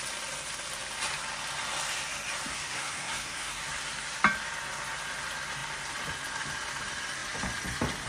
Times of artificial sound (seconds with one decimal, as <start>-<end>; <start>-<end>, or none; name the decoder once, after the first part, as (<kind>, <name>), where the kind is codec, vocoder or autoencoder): 2.5-3.6 (codec, SNAC)